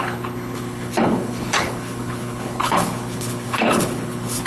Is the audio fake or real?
fake